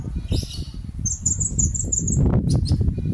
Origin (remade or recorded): recorded